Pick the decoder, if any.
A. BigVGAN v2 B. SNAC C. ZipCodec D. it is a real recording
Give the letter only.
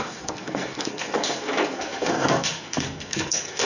B